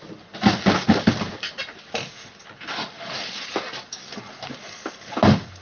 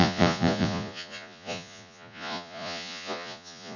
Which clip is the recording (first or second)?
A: first